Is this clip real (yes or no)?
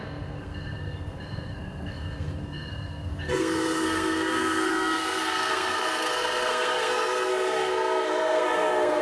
no